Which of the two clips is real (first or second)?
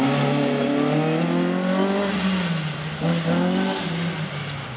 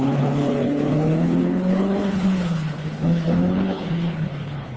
first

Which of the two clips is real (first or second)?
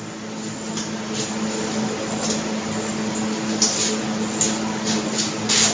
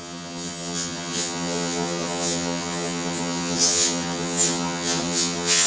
first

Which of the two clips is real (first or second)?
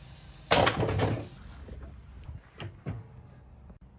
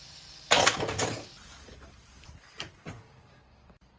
first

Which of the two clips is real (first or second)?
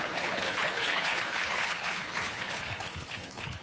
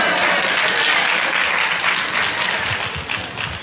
second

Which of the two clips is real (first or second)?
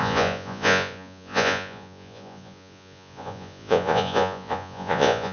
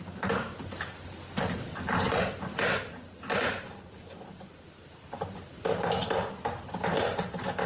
second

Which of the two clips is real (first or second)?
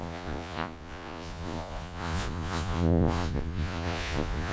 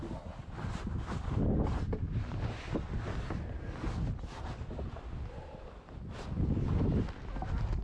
second